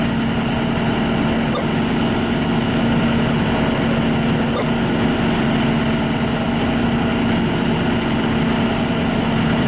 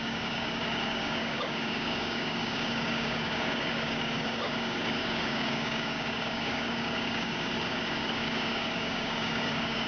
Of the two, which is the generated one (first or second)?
second